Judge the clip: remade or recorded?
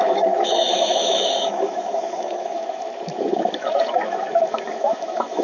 remade